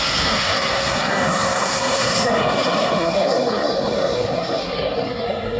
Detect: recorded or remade remade